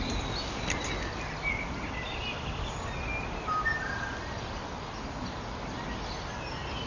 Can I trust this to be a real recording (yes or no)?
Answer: yes